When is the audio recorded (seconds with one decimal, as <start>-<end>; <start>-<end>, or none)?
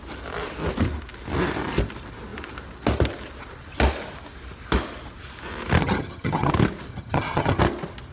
0.0-5.8; 6.5-6.9; 7.6-8.1